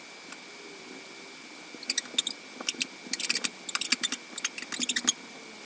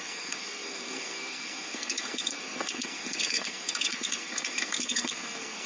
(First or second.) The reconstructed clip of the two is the second